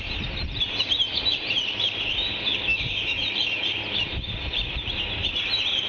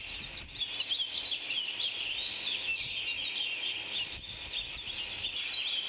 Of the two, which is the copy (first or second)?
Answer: first